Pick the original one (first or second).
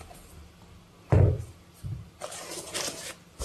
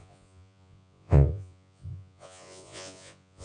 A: first